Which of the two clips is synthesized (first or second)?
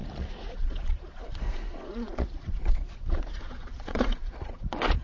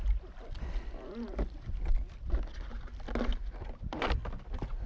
first